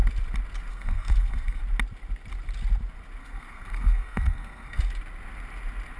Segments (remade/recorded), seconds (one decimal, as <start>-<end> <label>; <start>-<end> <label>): 0.0-0.7 recorded; 0.7-1.6 remade; 1.6-3.2 recorded; 3.2-4.8 remade; 4.8-6.0 recorded